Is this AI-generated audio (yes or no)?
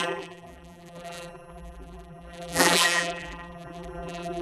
yes